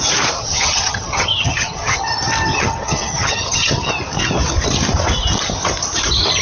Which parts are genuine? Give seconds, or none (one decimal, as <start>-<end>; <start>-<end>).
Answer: 0.0-0.4; 2.1-2.5; 3.9-6.4